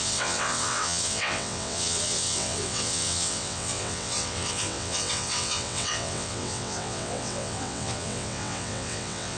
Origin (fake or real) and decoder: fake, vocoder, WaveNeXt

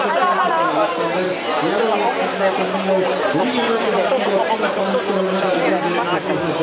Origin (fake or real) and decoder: real